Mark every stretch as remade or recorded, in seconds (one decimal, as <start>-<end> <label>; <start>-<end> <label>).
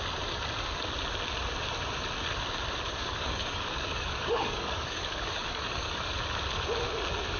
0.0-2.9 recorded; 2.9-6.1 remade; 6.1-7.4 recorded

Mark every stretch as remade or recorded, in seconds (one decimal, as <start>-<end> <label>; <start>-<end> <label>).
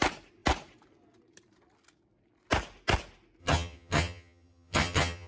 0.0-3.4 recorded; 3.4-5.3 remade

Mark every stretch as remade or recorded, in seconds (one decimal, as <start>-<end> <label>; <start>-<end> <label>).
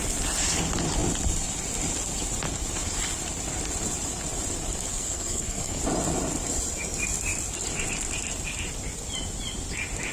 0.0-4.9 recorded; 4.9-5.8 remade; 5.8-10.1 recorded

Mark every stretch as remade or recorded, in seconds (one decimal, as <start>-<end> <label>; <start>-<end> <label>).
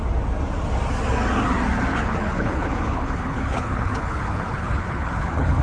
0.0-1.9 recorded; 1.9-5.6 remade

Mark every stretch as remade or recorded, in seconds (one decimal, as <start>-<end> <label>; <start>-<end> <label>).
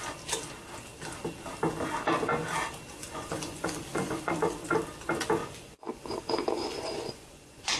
0.0-3.0 recorded; 3.0-4.3 remade; 4.3-5.4 recorded; 5.4-7.8 remade